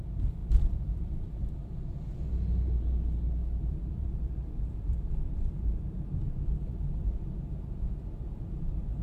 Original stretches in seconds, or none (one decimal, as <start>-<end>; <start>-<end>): 0.0-0.4; 1.5-3.4; 5.5-9.0